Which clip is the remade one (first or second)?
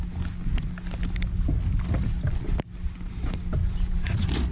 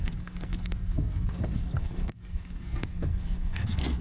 second